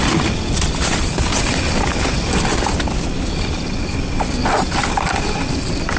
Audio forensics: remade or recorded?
recorded